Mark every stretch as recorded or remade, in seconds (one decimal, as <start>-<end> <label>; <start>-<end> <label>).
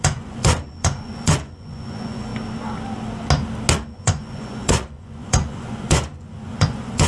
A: 0.0-2.3 remade; 2.3-3.7 recorded; 3.7-7.1 remade